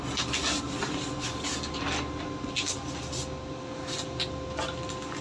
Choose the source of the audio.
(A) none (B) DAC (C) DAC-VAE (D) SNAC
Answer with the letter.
A